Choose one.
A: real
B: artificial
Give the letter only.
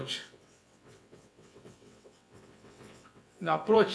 B